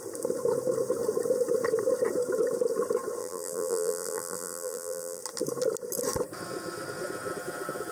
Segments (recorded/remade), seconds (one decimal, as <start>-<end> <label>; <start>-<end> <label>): 0.0-3.2 recorded; 3.2-5.2 remade; 5.2-7.9 recorded